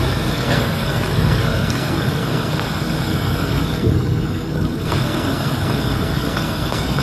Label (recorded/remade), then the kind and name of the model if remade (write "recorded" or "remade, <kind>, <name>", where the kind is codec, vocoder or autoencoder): remade, codec, SNAC